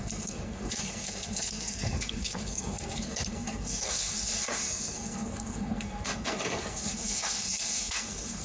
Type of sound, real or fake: fake